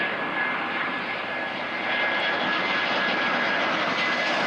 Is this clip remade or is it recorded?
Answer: recorded